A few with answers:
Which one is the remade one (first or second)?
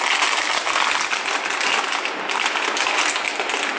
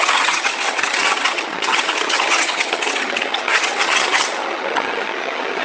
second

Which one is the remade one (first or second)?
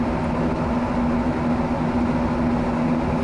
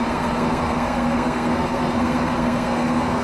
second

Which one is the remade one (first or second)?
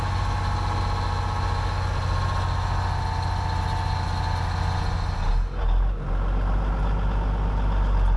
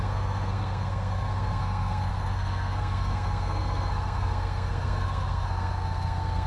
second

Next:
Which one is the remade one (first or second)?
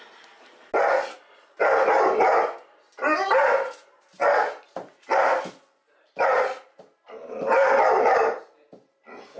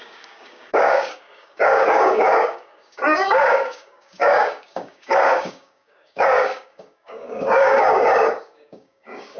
second